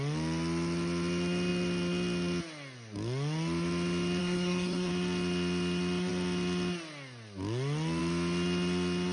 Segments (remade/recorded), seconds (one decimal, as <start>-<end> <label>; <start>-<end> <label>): 0.0-4.2 recorded; 4.2-4.9 remade; 4.9-9.1 recorded